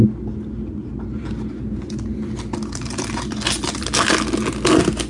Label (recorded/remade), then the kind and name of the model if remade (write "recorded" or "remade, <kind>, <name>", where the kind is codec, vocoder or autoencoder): recorded